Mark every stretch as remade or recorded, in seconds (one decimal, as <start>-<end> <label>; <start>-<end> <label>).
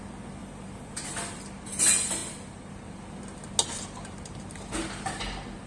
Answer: 0.0-0.4 recorded; 0.4-1.0 remade; 1.0-5.7 recorded